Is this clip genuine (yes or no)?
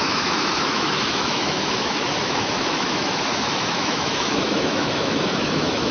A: no